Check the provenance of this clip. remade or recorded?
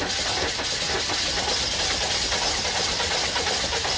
recorded